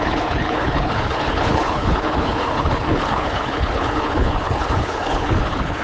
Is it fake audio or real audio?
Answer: fake